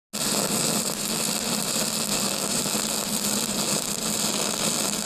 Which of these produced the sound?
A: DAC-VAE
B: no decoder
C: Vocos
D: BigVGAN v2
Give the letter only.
B